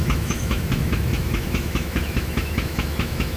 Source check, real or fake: fake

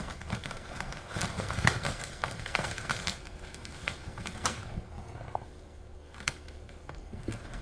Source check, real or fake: fake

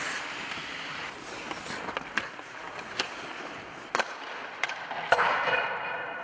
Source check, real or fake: real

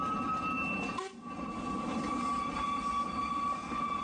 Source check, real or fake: real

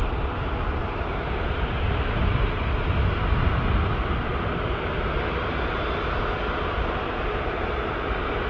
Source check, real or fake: real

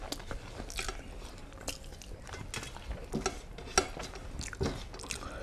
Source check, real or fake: real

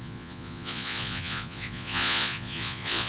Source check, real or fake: fake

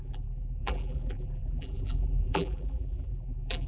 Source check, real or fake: fake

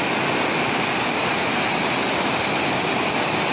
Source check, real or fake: real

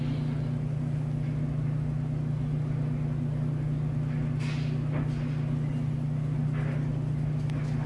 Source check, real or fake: real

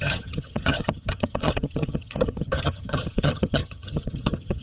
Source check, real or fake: fake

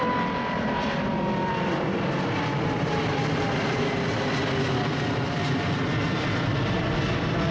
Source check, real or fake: fake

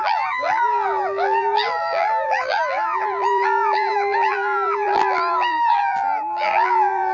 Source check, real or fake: fake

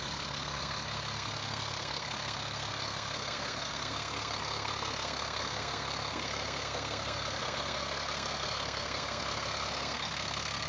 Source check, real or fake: fake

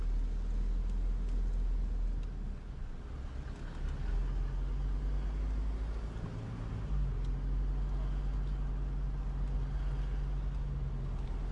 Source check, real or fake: real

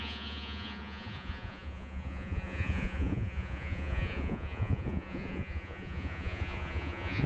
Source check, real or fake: fake